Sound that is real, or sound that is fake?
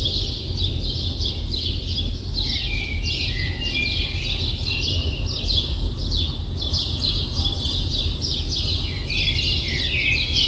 real